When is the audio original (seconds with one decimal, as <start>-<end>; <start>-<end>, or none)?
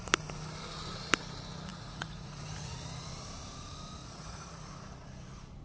0.0-1.7; 2.7-4.0; 4.8-5.6